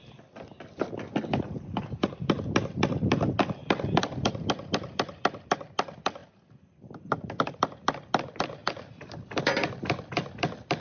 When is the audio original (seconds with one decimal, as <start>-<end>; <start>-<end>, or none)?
0.0-10.8